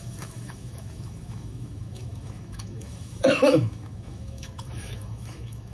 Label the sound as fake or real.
fake